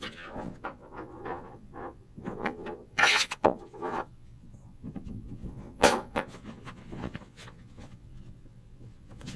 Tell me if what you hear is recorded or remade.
remade